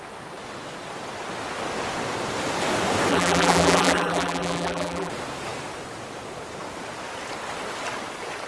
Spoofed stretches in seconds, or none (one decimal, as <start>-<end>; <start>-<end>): 3.1-5.1